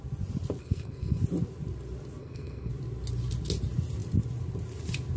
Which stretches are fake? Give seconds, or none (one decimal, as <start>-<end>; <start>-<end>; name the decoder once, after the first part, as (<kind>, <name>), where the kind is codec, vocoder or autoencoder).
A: 0.6-1.2 (codec, SNAC); 2.2-2.7